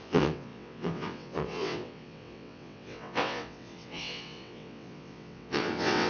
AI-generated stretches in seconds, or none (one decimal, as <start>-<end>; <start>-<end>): 0.0-6.1